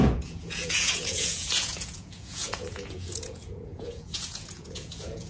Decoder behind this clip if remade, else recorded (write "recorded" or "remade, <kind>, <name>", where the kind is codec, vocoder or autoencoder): remade, vocoder, Vocos